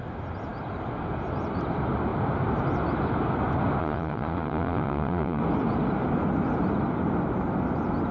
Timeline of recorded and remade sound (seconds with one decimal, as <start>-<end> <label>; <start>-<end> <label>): 0.0-3.8 recorded; 3.8-5.4 remade; 5.4-8.1 recorded